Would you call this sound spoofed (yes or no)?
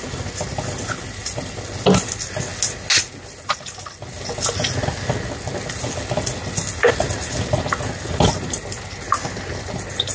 no